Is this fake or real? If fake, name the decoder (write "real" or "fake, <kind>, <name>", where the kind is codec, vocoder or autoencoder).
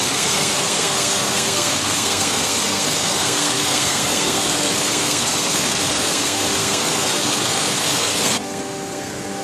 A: fake, codec, SNAC